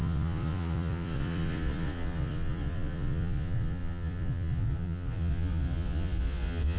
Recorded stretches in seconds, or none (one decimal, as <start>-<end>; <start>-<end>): none